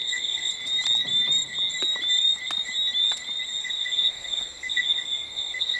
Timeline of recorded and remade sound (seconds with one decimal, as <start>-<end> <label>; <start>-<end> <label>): 0.0-0.5 remade; 0.5-3.6 recorded; 3.6-5.8 remade